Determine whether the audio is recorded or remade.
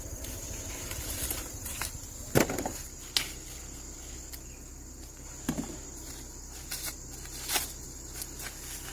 recorded